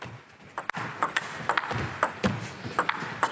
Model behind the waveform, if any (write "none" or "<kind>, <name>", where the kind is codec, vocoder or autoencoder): none